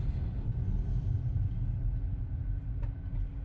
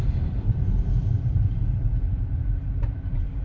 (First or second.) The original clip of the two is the first